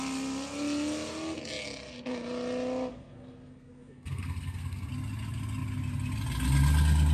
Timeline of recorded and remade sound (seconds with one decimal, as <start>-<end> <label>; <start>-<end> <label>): 0.0-2.9 recorded; 2.9-4.9 remade; 4.9-7.1 recorded